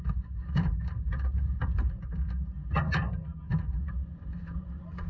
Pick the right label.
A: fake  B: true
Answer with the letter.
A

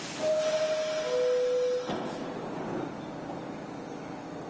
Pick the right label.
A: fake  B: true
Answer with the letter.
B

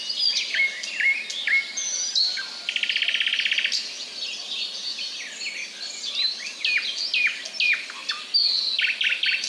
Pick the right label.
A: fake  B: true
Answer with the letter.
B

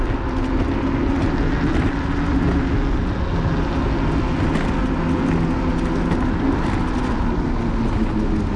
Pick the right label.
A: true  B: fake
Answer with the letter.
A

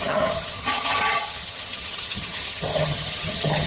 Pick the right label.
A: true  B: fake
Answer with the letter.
B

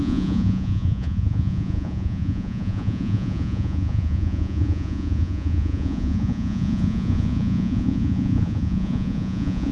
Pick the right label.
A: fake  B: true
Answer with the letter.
A